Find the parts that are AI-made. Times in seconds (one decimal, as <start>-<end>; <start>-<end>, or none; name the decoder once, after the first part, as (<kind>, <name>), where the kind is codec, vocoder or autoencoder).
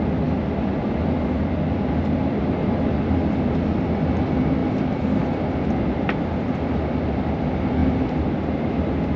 7.8-9.2 (vocoder, BigVGAN v2)